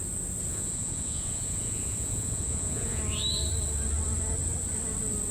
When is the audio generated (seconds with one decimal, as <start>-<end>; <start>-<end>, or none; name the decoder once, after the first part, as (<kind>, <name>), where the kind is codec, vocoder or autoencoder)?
0.5-3.0 (vocoder, Vocos)